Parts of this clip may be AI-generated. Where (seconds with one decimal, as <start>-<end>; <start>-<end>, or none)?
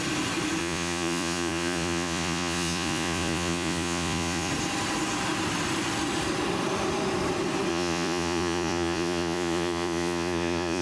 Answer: 0.6-4.5; 7.7-10.8